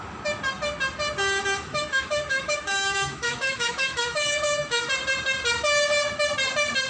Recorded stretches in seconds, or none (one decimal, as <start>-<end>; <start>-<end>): 0.0-1.7; 4.8-6.9